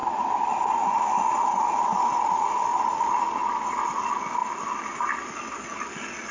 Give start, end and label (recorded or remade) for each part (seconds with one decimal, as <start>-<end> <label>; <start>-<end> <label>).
0.0-6.3 recorded